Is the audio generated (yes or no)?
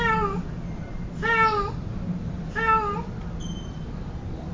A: no